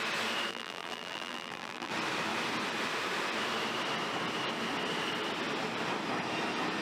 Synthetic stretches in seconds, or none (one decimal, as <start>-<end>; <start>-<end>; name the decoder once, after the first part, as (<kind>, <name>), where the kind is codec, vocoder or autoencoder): 0.5-1.9 (vocoder, BigVGAN v2)